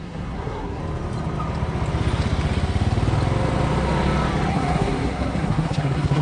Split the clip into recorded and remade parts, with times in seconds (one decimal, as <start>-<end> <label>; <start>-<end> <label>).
0.0-0.8 remade; 0.8-4.5 recorded; 4.5-6.2 remade